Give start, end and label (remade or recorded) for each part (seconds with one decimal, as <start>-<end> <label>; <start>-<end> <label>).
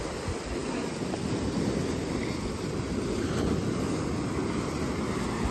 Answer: 0.0-5.5 recorded